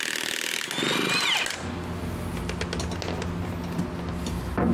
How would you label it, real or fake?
real